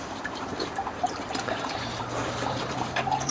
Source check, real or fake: fake